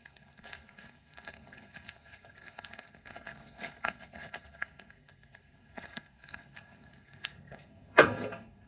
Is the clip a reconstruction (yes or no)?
yes